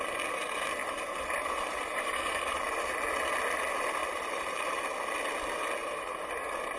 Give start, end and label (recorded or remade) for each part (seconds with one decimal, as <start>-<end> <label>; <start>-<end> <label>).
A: 0.0-0.8 recorded; 0.8-3.0 remade; 3.0-4.0 recorded; 4.0-4.8 remade; 4.8-5.8 recorded; 5.8-6.3 remade; 6.3-6.8 recorded